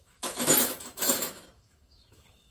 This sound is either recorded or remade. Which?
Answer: remade